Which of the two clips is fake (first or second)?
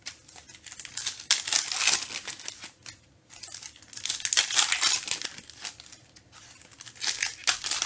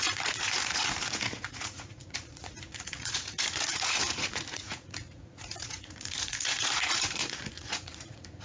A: second